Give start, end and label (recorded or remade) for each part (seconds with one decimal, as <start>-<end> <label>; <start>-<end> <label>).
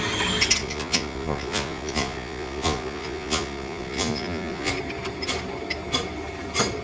0.0-0.6 recorded; 0.6-4.7 remade; 4.7-6.8 recorded